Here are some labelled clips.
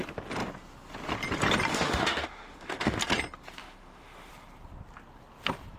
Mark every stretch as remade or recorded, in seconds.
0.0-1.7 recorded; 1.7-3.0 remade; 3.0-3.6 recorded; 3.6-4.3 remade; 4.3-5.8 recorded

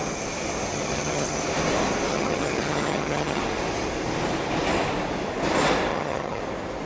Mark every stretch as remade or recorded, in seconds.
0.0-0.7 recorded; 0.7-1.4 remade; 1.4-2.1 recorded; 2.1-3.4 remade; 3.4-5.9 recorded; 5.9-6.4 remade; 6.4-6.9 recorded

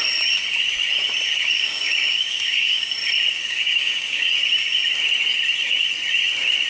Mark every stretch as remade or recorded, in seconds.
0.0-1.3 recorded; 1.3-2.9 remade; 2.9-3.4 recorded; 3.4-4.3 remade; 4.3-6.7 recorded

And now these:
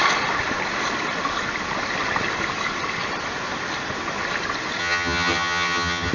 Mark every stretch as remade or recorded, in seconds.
0.0-4.8 recorded; 4.8-6.1 remade

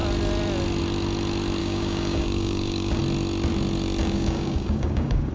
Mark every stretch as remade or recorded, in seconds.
0.0-1.6 recorded; 1.6-3.0 remade; 3.0-4.0 recorded; 4.0-5.3 remade

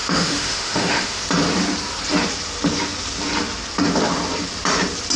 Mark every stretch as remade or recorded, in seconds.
0.0-1.2 remade; 1.2-5.2 recorded

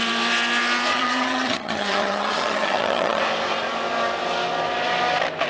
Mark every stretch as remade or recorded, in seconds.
0.0-0.9 recorded; 0.9-3.2 remade; 3.2-5.5 recorded

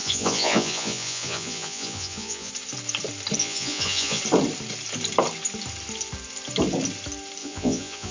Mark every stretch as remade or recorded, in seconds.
0.0-2.5 remade; 2.5-3.4 recorded; 3.4-4.2 remade; 4.2-7.4 recorded; 7.4-8.1 remade